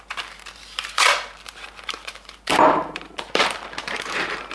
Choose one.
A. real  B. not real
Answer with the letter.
B